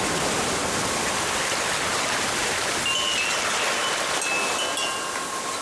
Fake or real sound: real